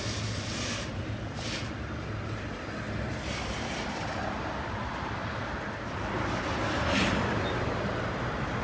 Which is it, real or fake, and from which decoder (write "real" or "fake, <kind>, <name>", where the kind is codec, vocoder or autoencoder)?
real